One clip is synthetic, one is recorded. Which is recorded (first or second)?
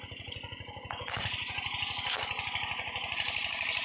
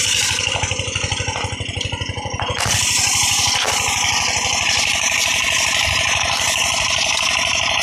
first